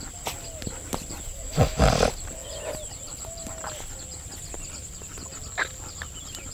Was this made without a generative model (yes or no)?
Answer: yes